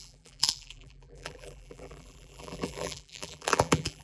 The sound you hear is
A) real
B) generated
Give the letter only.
B